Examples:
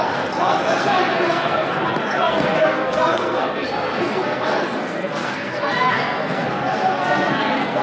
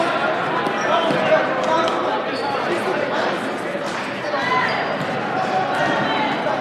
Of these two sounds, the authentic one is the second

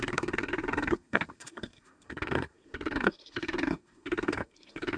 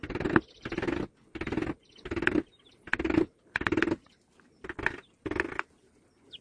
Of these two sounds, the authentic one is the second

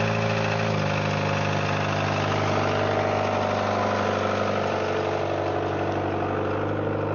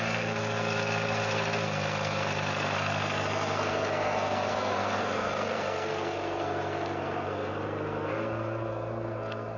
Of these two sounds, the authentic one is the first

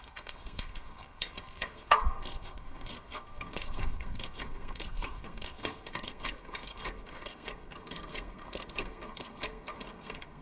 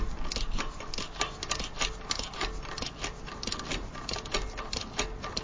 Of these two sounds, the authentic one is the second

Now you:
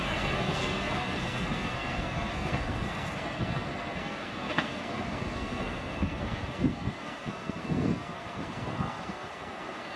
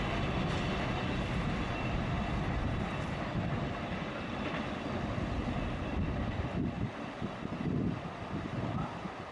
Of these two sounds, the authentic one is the second